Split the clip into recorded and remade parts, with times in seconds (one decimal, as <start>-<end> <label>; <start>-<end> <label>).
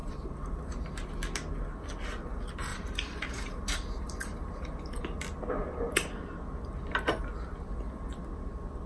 0.0-1.1 remade; 1.1-2.7 recorded; 2.7-5.0 remade; 5.0-8.9 recorded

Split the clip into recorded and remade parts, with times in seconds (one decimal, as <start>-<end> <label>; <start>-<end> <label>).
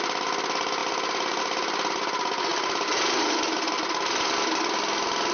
0.0-5.3 recorded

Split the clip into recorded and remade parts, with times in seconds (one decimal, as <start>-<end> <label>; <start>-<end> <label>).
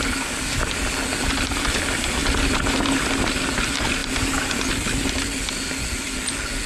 0.0-6.7 recorded